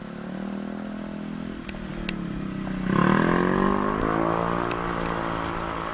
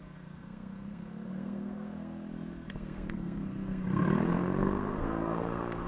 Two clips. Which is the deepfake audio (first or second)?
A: second